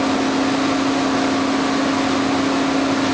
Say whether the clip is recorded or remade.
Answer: recorded